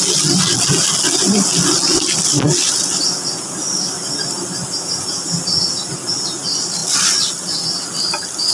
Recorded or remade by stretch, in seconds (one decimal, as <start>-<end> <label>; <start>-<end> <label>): 0.0-8.5 recorded